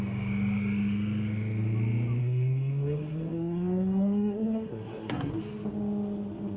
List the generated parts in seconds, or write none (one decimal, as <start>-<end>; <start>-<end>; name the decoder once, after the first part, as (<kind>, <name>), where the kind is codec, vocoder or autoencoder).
2.2-5.3 (codec, SNAC)